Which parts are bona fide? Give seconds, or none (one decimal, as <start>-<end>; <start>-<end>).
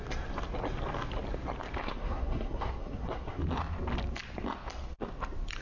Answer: 0.0-1.8; 3.4-5.6